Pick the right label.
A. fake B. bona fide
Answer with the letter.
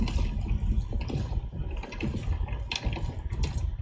B